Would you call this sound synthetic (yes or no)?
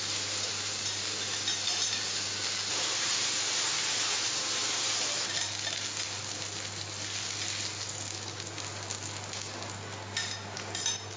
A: no